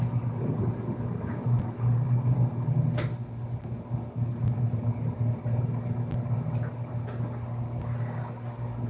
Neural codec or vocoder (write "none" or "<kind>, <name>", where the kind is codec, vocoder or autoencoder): none